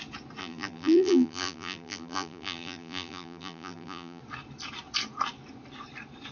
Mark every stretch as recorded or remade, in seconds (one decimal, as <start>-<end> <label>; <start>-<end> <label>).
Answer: 0.0-0.4 recorded; 0.4-4.2 remade; 4.2-6.3 recorded